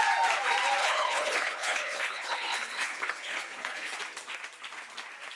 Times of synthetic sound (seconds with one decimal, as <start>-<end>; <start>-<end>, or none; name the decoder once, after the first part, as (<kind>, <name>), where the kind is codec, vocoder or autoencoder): 0.8-4.0 (codec, HILCodec)